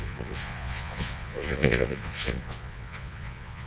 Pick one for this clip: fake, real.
fake